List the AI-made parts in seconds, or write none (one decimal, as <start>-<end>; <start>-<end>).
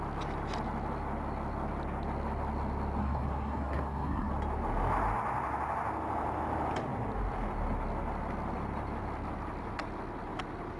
3.0-4.3